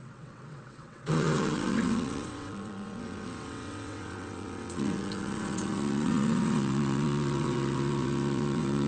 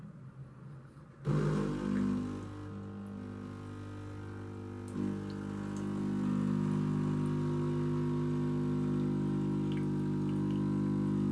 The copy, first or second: first